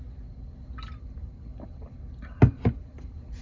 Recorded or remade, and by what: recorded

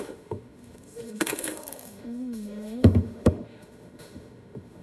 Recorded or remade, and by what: remade, autoencoder, DAC-VAE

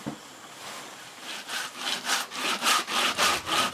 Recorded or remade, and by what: recorded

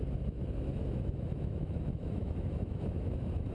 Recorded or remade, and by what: remade, autoencoder, DAC-VAE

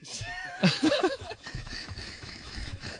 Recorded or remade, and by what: remade, autoencoder, DAC-VAE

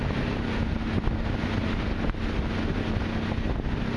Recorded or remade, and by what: recorded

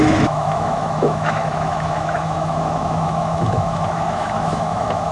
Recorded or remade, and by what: remade, autoencoder, DAC-VAE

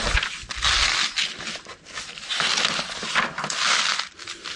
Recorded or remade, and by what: recorded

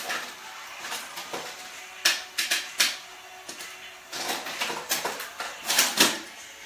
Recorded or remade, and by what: recorded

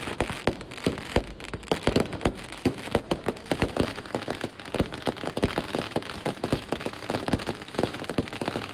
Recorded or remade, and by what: remade, autoencoder, DAC-VAE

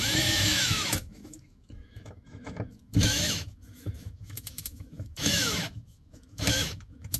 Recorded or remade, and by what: remade, autoencoder, DAC-VAE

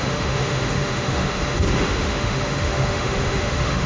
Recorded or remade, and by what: remade, autoencoder, DAC-VAE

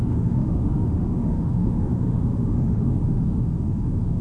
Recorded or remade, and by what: remade, autoencoder, DAC-VAE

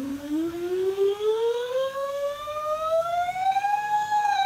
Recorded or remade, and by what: remade, autoencoder, DAC-VAE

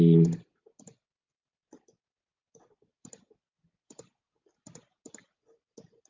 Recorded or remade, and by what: recorded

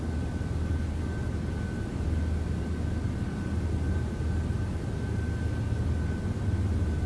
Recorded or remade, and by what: recorded